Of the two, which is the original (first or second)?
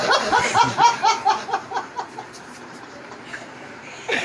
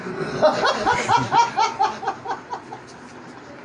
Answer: second